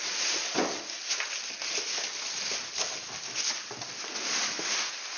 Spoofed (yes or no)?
no